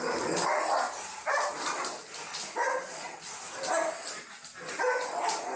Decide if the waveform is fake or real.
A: real